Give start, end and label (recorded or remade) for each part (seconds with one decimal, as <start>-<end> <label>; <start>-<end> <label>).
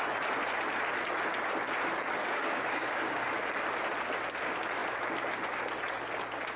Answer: 0.0-2.2 recorded; 2.2-3.4 remade; 3.4-6.6 recorded